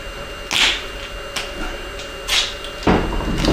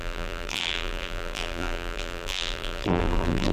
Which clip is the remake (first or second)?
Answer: second